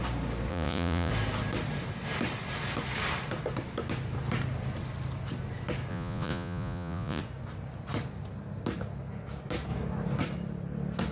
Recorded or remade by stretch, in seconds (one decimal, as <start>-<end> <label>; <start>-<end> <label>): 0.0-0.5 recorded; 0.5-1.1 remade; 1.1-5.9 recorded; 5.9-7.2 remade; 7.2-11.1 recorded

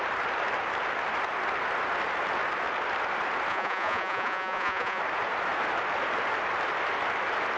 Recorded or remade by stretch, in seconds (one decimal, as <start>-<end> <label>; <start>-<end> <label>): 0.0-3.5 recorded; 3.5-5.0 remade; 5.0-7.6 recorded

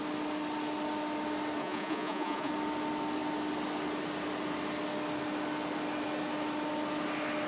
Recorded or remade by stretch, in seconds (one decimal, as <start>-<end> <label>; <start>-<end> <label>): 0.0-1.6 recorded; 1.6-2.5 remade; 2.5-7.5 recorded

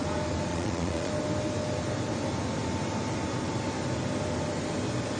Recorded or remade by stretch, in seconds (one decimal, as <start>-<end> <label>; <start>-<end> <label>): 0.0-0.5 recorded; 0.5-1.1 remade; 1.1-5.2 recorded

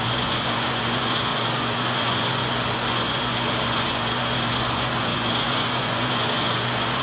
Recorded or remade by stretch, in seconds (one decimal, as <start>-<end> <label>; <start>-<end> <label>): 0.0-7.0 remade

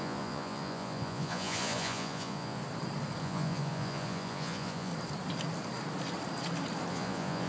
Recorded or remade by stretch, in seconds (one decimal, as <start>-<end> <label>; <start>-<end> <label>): 0.0-2.6 remade; 2.6-3.2 recorded; 3.2-4.9 remade; 4.9-6.9 recorded; 6.9-7.5 remade

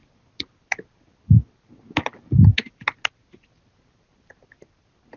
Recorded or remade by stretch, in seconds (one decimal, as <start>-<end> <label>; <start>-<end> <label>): 0.0-5.2 recorded